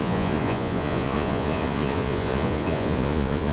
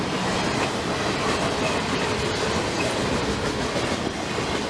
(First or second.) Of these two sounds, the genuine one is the second